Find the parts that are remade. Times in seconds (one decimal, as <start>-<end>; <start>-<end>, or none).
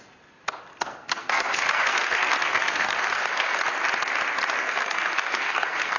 0.7-3.6; 4.6-6.0